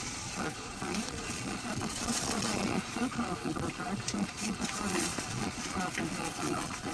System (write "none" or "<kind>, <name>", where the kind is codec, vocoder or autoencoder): vocoder, Vocos